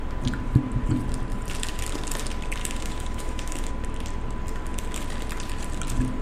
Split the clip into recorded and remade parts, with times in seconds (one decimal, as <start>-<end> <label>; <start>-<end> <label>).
0.0-2.6 recorded; 2.6-3.7 remade; 3.7-6.2 recorded